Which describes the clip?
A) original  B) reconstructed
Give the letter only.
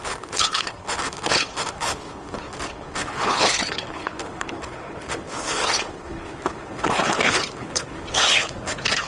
B